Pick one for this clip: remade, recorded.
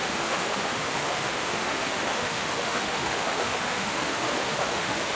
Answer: remade